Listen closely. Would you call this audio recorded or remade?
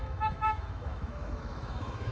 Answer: remade